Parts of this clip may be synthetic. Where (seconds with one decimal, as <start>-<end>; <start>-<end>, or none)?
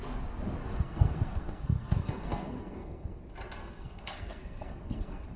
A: 0.6-3.2; 3.6-5.4